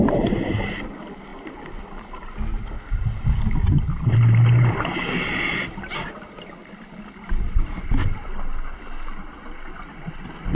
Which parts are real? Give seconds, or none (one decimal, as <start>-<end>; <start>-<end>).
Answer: 0.0-10.5